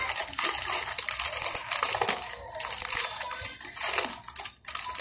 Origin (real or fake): real